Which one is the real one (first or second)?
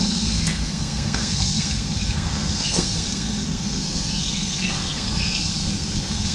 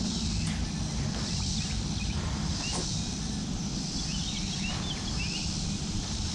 second